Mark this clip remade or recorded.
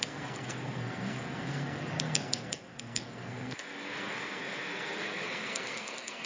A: remade